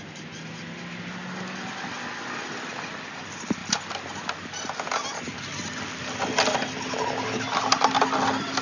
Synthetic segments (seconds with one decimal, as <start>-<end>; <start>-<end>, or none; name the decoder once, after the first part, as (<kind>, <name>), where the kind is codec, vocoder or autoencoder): none